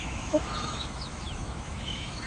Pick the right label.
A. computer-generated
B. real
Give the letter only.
A